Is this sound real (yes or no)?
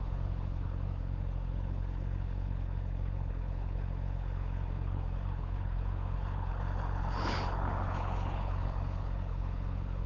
no